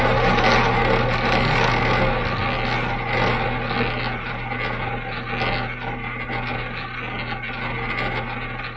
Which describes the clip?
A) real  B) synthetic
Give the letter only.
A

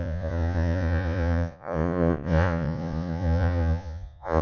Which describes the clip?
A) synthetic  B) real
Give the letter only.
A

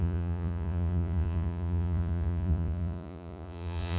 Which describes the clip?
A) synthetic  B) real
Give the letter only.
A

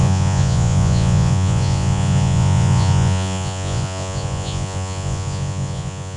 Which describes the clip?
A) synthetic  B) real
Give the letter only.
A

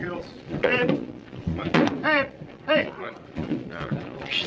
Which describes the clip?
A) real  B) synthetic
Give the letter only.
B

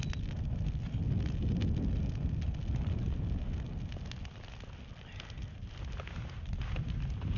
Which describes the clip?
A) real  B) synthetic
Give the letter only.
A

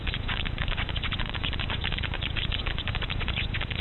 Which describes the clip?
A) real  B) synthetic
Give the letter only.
B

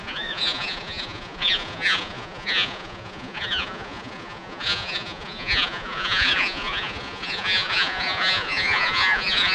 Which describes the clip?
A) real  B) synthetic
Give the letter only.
B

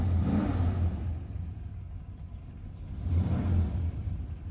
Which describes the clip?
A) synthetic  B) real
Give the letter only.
B